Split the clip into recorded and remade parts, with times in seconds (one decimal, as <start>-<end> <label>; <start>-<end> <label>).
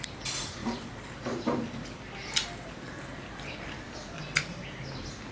0.0-5.3 recorded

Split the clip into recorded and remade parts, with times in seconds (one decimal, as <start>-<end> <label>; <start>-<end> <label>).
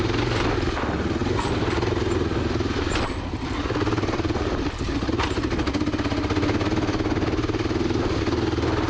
0.0-3.4 recorded; 3.4-5.1 remade; 5.1-8.9 recorded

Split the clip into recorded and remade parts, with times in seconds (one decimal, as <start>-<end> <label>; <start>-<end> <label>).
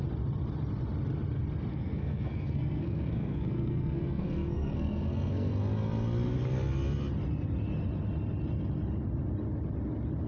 0.0-1.7 recorded; 1.7-5.5 remade; 5.5-10.3 recorded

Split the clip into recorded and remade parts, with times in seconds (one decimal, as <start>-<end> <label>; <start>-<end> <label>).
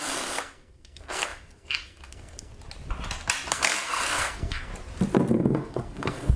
0.0-2.5 remade; 2.5-3.5 recorded; 3.5-4.7 remade; 4.7-5.3 recorded; 5.3-6.4 remade